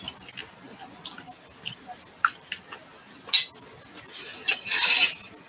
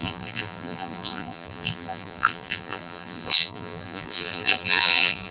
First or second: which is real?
first